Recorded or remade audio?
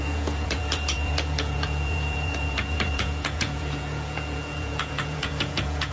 remade